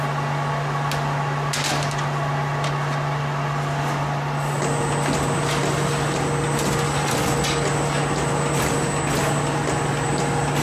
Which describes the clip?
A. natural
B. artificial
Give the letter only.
A